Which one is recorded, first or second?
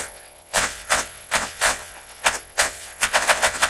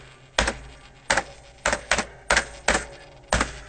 second